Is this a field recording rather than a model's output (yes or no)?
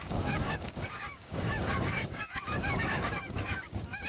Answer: no